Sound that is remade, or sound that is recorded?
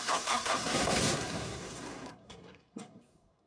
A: remade